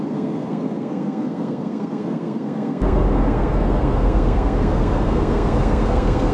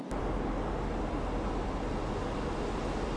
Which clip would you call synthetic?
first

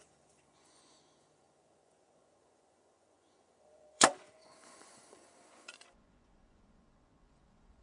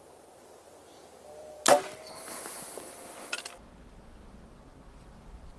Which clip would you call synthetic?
first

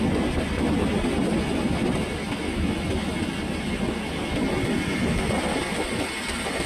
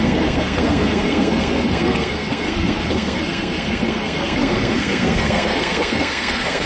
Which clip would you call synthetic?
second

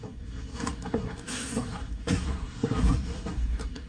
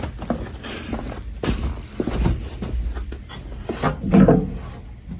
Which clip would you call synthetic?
first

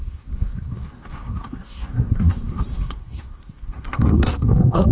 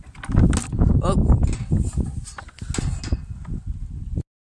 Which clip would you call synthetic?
first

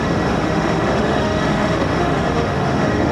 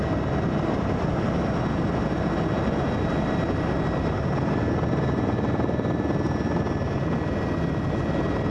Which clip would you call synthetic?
first